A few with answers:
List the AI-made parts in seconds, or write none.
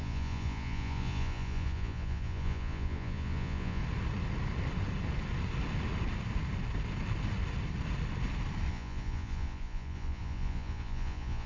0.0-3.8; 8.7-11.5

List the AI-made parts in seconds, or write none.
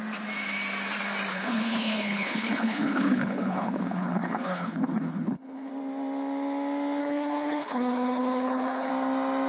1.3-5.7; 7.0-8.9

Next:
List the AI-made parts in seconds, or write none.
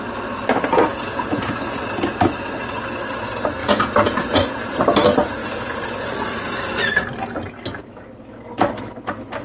0.9-1.6; 3.6-4.7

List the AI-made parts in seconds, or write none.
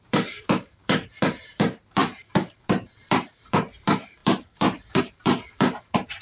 0.0-6.2